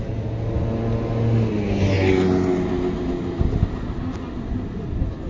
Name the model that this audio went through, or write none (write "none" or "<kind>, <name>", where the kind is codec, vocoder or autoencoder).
none